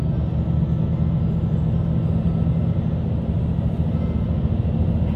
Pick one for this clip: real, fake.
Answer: real